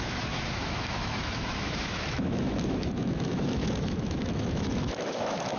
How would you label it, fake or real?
fake